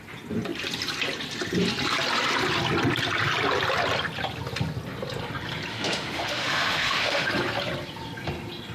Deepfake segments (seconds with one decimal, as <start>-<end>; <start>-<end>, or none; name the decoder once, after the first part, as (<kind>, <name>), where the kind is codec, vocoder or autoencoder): 5.7-7.3 (autoencoder, DAC-VAE)